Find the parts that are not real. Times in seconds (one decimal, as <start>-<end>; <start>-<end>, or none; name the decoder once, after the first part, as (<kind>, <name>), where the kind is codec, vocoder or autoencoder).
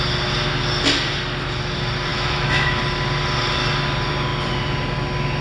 2.1-2.8 (autoencoder, DAC-VAE)